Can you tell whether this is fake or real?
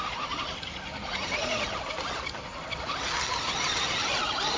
real